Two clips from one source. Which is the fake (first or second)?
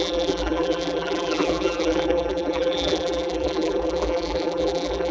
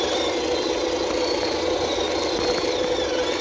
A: first